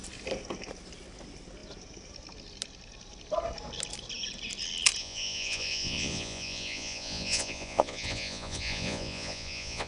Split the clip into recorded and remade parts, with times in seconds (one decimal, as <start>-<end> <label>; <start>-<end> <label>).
0.0-5.0 recorded; 5.0-9.9 remade